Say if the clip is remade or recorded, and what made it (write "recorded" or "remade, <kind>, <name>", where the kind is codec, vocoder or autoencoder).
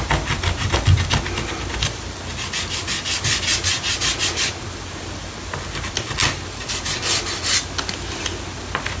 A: recorded